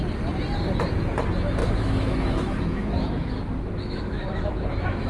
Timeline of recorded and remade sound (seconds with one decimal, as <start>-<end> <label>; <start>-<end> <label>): 0.0-1.6 recorded; 1.6-5.1 remade